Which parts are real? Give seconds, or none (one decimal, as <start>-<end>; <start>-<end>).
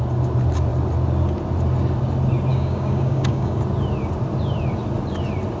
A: 0.0-2.5; 3.6-5.6